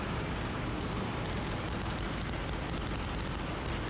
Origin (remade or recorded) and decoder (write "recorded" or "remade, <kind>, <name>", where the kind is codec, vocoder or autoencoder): recorded